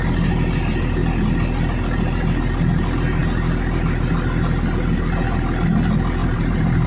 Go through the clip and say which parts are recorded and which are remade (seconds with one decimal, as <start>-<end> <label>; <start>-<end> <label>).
0.0-6.2 recorded; 6.2-6.9 remade